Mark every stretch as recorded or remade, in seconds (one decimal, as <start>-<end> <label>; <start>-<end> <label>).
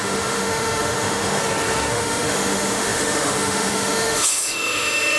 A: 0.0-1.4 remade; 1.4-1.9 recorded; 1.9-5.2 remade